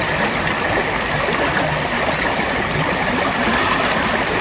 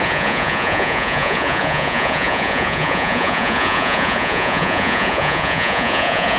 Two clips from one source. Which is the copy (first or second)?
second